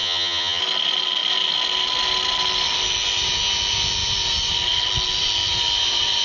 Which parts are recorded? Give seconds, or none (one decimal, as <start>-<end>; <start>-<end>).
0.6-6.2